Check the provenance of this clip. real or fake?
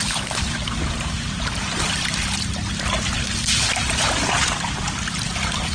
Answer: real